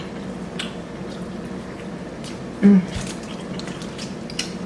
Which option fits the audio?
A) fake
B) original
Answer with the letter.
B